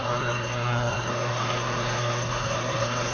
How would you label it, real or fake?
fake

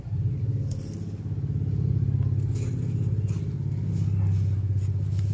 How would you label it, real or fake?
real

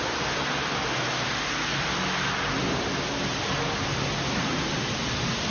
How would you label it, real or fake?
real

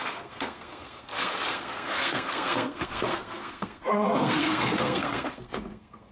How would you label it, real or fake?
fake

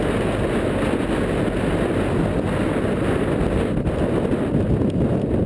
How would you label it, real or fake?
real